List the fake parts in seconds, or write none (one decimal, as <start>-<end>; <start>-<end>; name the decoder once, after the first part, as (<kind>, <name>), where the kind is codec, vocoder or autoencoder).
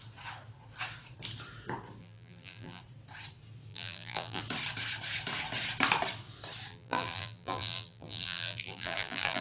2.0-2.8 (vocoder, BigVGAN v2); 3.7-4.4; 6.7-9.4